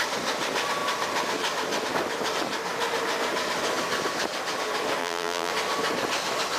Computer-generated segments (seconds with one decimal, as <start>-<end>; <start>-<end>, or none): 5.0-5.5